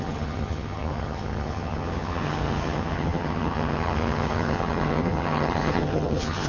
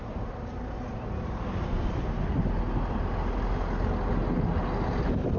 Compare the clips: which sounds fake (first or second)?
first